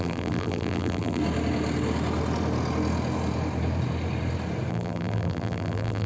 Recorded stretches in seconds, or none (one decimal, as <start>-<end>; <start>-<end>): 1.2-4.7